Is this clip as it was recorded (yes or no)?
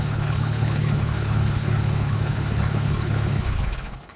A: no